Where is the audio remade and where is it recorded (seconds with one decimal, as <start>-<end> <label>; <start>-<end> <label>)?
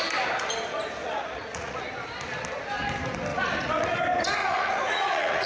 0.0-1.0 recorded; 1.0-1.9 remade; 1.9-3.3 recorded; 3.3-4.0 remade; 4.0-4.4 recorded; 4.4-5.5 remade